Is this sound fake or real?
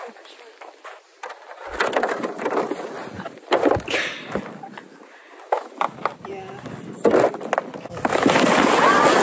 real